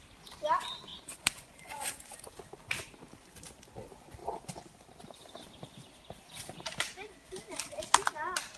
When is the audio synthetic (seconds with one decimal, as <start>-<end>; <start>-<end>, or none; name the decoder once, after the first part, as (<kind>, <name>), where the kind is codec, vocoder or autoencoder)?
0.9-1.9 (vocoder, Vocos)